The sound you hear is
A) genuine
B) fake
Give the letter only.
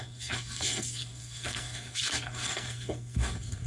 B